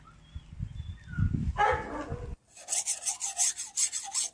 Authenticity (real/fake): real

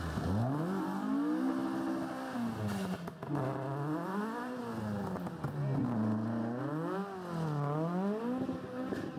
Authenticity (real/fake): real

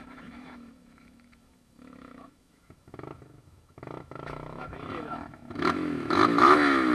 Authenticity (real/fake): fake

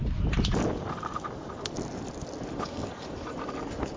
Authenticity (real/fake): real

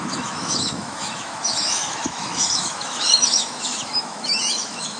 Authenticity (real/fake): fake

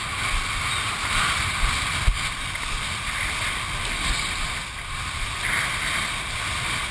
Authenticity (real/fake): real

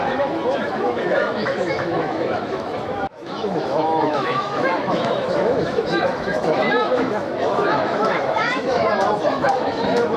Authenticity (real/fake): fake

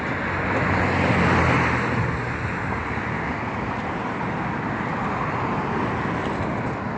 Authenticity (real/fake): real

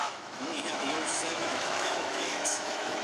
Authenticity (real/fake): fake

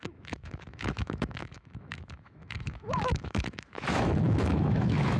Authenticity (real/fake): fake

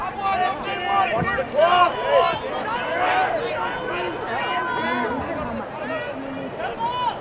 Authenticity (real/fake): real